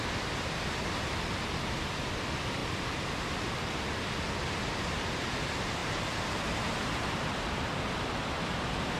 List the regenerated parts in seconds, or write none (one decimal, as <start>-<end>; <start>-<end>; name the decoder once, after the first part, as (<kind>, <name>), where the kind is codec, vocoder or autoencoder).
2.6-3.2 (vocoder, BigVGAN v2); 5.8-6.4; 6.9-7.7